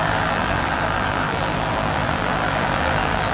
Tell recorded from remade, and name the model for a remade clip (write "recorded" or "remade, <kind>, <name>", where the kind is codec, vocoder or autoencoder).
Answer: remade, vocoder, BigVGAN v2